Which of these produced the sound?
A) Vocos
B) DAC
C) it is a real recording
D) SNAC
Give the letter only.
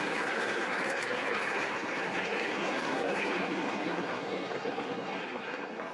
D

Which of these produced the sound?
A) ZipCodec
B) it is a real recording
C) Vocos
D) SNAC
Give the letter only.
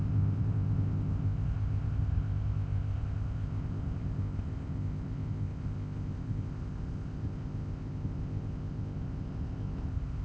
A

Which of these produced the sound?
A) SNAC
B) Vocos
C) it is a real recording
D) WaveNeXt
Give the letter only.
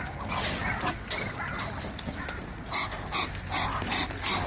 C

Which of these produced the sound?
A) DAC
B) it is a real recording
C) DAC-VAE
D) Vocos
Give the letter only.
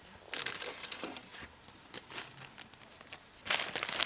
B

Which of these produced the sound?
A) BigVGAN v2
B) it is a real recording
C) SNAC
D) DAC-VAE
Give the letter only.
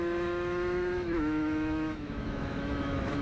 D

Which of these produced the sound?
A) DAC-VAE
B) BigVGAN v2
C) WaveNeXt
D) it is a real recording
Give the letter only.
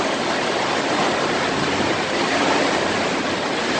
D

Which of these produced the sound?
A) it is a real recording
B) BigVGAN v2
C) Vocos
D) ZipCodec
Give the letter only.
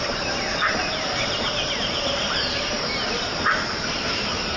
B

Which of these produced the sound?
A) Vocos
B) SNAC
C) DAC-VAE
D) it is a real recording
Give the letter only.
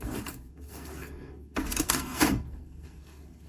B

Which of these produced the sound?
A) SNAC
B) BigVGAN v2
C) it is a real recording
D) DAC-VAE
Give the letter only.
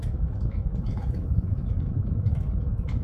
D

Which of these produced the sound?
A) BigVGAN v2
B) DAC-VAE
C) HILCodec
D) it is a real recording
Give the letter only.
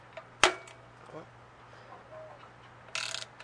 D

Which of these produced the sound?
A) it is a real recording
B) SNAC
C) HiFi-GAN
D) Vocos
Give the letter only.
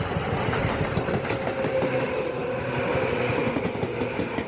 A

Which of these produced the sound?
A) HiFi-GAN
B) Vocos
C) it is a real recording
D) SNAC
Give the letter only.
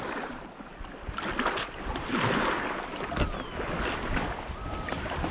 C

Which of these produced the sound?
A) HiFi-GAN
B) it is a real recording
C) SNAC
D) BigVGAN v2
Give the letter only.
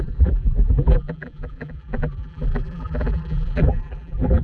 D